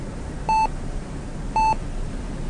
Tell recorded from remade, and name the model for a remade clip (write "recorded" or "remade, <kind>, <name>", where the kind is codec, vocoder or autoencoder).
recorded